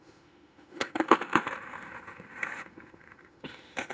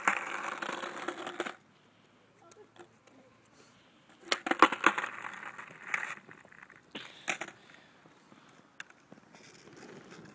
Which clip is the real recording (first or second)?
second